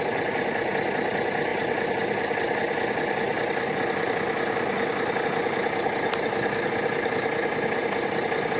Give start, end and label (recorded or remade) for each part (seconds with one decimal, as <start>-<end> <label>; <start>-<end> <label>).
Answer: 0.0-8.6 recorded